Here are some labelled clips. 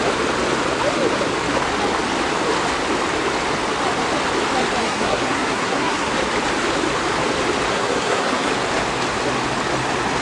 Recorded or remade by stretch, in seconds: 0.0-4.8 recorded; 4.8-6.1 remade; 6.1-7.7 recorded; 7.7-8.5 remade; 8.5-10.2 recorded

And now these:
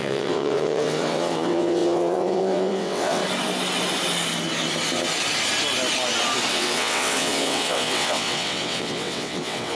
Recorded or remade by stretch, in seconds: 0.0-3.2 remade; 3.2-6.5 recorded; 6.5-9.7 remade

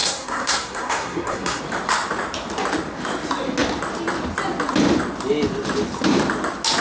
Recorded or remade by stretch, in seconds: 0.0-1.6 remade; 1.6-6.8 recorded

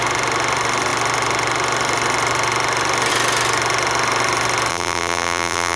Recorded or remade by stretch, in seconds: 0.0-4.7 recorded; 4.7-5.8 remade

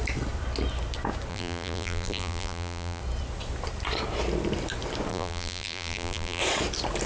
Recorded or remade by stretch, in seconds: 0.0-1.3 recorded; 1.3-3.0 remade; 3.0-5.1 recorded; 5.1-6.4 remade; 6.4-7.1 recorded

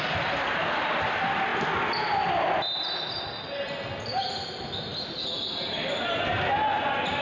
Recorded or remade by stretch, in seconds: 0.0-7.2 recorded

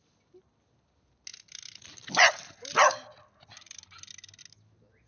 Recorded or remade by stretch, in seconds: 0.0-5.1 recorded

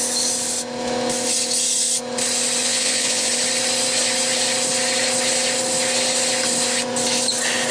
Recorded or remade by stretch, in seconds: 0.0-2.6 recorded; 2.6-3.3 remade; 3.3-7.7 recorded